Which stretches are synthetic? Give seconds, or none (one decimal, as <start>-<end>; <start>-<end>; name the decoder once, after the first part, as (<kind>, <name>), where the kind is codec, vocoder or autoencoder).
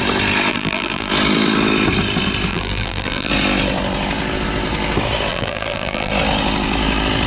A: 0.5-1.1 (vocoder, BigVGAN v2); 2.5-3.3; 5.3-6.1